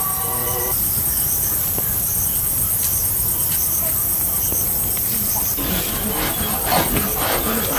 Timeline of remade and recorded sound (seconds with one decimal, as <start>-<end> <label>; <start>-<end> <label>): 0.0-0.4 recorded; 0.4-2.2 remade; 2.2-7.8 recorded